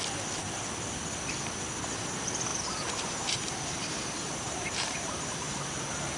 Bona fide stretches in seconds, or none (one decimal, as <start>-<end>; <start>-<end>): 0.0-2.5; 5.8-6.2